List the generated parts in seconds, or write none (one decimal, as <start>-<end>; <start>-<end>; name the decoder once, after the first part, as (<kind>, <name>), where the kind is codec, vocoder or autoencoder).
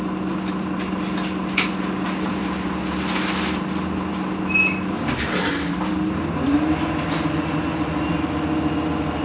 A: none